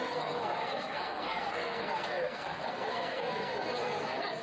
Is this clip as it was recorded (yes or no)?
no